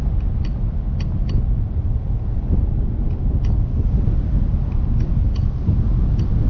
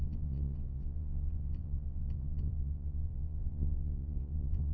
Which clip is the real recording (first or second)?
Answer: first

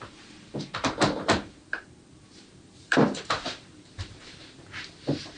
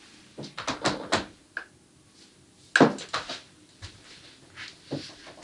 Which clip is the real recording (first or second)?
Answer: second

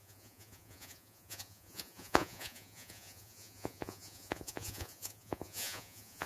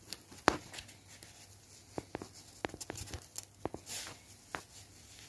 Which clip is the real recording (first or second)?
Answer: second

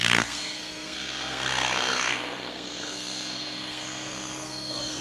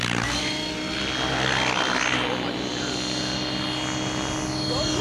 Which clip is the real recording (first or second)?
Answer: second